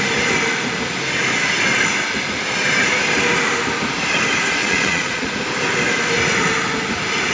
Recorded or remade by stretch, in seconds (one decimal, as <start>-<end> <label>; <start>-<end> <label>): 0.0-4.6 recorded; 4.6-5.3 remade; 5.3-7.3 recorded